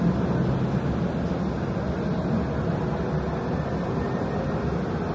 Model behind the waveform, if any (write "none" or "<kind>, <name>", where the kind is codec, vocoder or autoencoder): none